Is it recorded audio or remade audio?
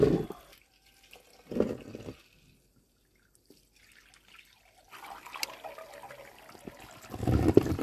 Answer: recorded